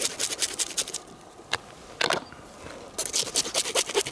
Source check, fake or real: real